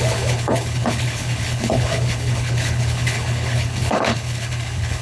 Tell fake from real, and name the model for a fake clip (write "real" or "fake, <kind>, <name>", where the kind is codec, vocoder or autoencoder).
fake, codec, HILCodec